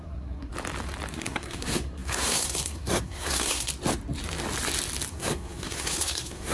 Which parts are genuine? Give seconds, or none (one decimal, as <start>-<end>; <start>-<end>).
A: 0.5-1.1; 3.7-5.1